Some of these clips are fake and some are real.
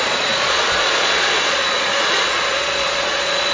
fake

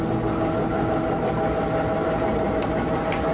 real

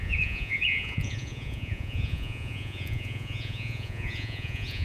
fake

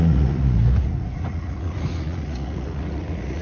fake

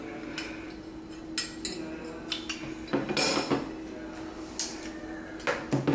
real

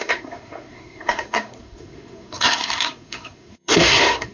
fake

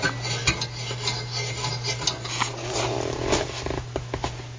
real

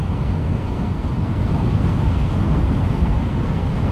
fake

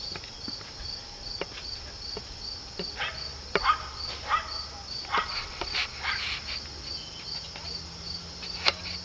real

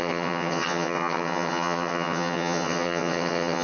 fake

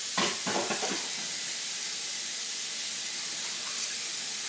real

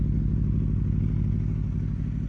real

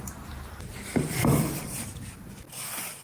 real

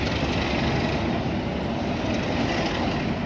real